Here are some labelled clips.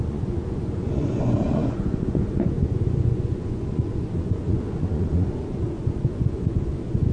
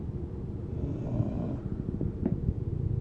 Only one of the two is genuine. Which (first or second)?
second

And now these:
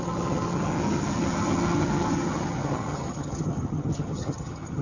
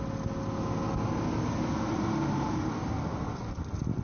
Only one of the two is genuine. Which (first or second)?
second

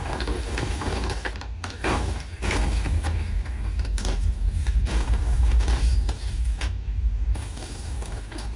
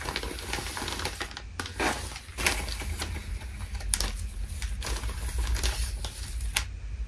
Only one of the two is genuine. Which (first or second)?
second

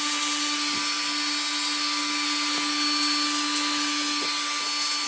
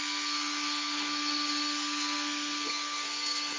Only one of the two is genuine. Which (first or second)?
first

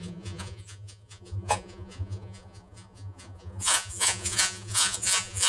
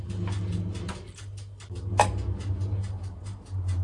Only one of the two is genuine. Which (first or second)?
second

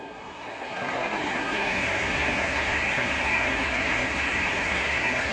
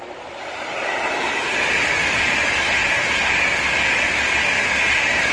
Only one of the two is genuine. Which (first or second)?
second